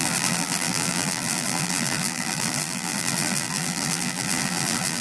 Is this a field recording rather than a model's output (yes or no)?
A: no